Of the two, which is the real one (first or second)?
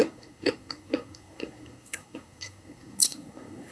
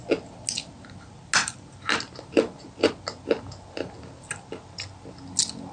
second